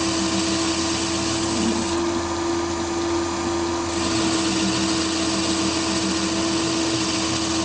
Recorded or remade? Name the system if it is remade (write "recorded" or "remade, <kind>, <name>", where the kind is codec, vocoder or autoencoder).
recorded